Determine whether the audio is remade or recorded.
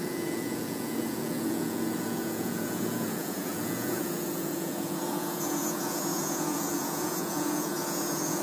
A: remade